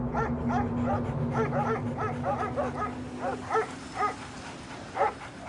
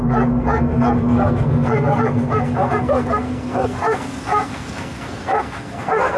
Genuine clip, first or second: first